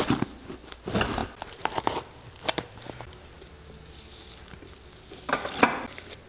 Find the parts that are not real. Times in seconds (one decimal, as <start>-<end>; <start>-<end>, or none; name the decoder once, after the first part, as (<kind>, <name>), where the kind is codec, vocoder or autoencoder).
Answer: none